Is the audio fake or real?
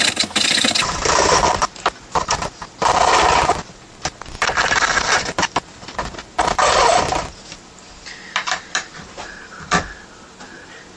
real